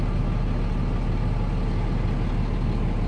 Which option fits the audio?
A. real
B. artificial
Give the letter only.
A